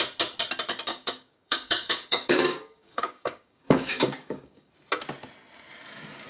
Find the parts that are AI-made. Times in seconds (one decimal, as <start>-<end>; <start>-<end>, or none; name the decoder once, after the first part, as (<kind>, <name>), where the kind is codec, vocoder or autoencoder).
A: 0.9-4.7 (codec, DAC)